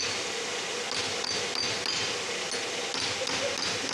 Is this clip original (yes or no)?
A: yes